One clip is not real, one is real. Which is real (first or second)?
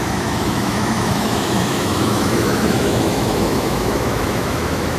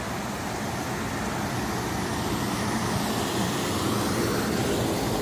second